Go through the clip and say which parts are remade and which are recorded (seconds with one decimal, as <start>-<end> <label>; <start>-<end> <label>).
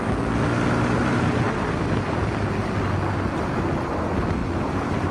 0.0-4.4 recorded; 4.4-5.1 remade